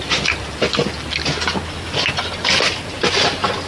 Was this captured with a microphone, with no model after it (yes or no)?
yes